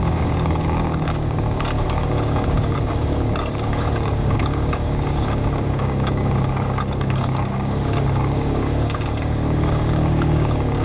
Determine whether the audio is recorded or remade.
remade